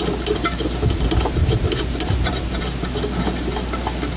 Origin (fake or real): real